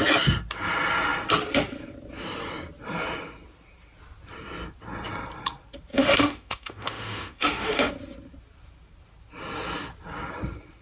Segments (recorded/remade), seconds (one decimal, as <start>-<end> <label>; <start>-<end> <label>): 0.0-5.9 recorded; 5.9-7.9 remade; 7.9-10.8 recorded